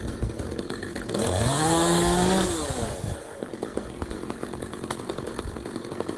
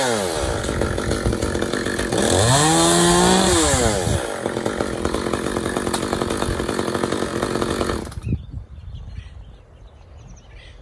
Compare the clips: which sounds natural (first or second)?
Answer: second